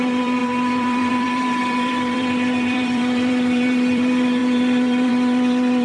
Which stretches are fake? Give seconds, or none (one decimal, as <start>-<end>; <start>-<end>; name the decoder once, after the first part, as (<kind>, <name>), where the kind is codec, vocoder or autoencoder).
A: 0.0-5.8 (vocoder, BigVGAN v2)